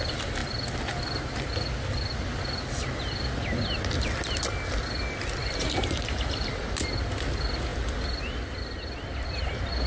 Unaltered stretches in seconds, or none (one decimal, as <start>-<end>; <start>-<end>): 0.0-5.4; 6.6-9.9